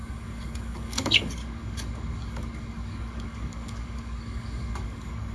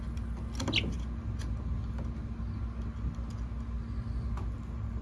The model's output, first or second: first